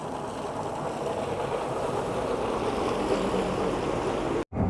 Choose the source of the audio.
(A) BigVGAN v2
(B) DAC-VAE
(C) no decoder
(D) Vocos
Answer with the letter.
C